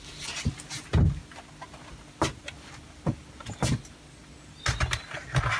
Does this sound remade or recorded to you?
recorded